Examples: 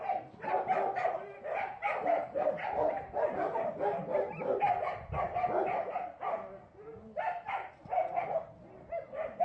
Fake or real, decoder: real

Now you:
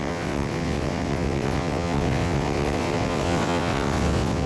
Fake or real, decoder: fake, vocoder, WaveNeXt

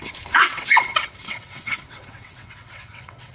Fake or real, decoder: fake, vocoder, WaveNeXt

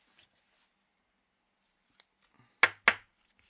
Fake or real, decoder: real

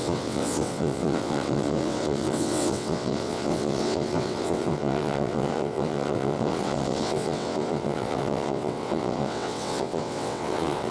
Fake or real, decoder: fake, vocoder, WaveNeXt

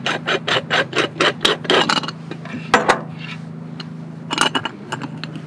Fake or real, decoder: real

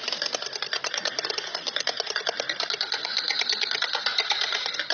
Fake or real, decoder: real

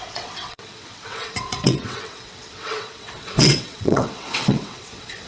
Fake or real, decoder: fake, vocoder, WaveNeXt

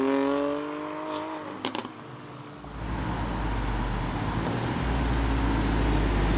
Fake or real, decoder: real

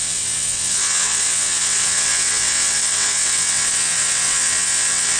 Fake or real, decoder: fake, vocoder, WaveNeXt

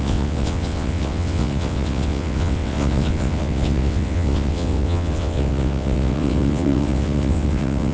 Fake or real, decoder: fake, vocoder, WaveNeXt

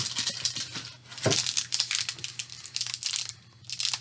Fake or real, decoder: real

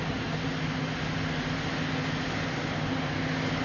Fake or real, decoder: real